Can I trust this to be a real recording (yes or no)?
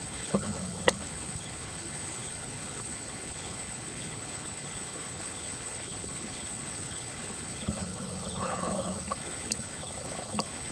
no